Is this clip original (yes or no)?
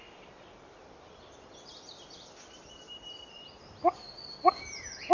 no